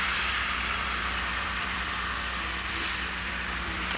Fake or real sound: fake